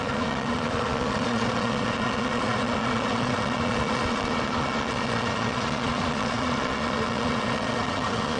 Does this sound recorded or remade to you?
remade